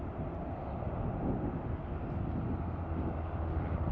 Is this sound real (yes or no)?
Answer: yes